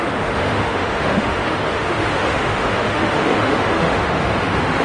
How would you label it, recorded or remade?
remade